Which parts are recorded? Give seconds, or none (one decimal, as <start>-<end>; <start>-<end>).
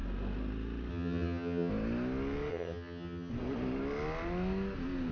0.0-0.9; 1.7-2.5; 3.3-5.1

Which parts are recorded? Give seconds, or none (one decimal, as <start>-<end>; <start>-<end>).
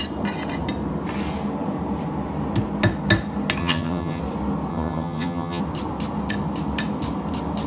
0.0-3.6; 4.2-4.7; 5.6-7.7